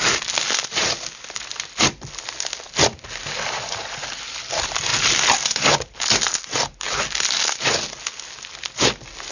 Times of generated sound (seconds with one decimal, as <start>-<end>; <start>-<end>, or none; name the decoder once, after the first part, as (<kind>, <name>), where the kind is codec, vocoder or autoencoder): none